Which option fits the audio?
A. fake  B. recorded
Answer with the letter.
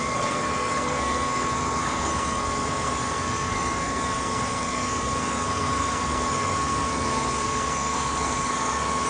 A